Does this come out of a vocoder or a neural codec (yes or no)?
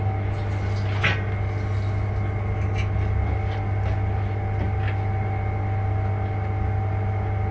no